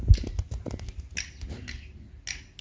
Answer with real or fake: real